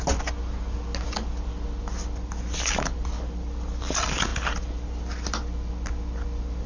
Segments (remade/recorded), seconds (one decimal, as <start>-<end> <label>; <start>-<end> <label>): 0.0-6.7 recorded